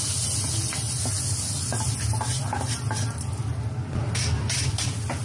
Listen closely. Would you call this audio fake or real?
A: real